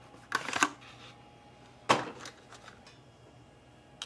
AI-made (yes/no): no